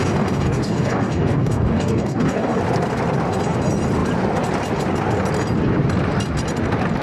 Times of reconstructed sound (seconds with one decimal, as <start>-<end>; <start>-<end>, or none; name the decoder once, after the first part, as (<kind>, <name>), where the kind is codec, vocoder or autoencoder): 0.0-2.6 (codec, DAC)